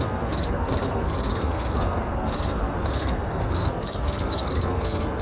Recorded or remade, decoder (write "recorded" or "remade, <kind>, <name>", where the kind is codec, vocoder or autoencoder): remade, codec, SNAC